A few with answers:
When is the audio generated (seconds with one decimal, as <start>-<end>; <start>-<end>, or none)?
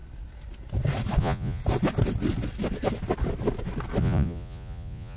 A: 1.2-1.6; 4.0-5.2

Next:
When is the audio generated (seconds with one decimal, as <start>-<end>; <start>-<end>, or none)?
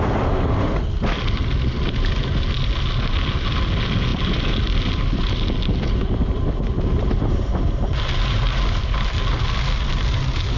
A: none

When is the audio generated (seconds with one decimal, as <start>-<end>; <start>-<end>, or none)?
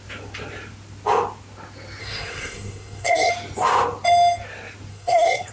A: 2.0-3.3; 4.9-5.5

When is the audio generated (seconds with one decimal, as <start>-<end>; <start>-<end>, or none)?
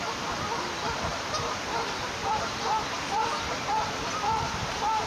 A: 1.1-1.6; 2.2-5.1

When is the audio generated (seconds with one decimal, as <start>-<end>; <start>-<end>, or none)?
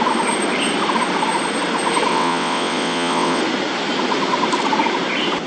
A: 2.1-3.4